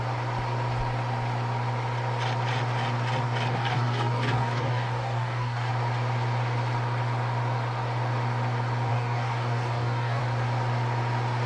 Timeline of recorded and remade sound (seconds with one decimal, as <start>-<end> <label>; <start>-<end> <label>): 0.0-3.5 recorded; 3.5-5.7 remade; 5.7-8.9 recorded; 8.9-10.2 remade; 10.2-11.5 recorded